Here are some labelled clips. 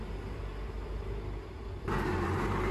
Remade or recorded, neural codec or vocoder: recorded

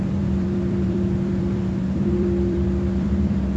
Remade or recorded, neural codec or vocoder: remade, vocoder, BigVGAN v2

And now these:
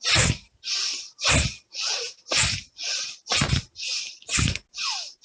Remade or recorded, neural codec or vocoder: recorded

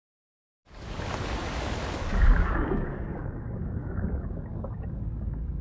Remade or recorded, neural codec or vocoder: remade, codec, DAC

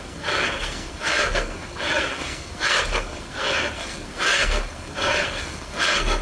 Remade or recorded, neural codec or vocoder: remade, codec, SNAC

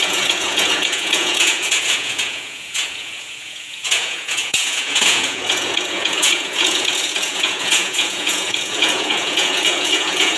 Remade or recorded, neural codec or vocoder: remade, vocoder, Vocos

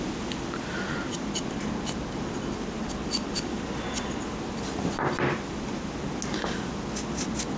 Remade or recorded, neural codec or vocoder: recorded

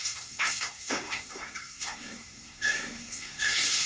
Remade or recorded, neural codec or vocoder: remade, codec, SNAC